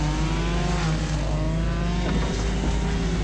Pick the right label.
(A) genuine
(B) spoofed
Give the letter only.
A